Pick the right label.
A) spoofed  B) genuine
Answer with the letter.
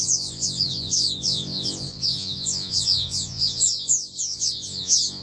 A